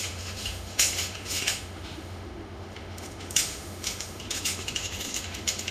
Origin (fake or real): fake